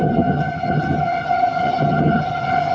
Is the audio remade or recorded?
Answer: remade